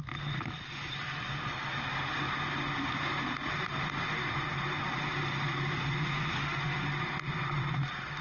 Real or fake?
real